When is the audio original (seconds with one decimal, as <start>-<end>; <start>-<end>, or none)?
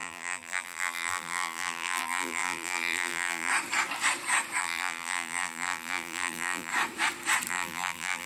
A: 3.5-4.6; 6.7-7.5